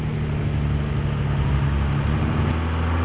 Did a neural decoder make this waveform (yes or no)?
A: no